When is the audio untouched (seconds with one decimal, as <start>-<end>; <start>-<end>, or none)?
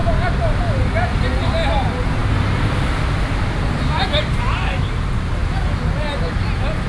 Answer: 0.0-6.9